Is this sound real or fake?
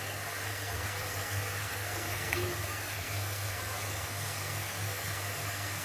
fake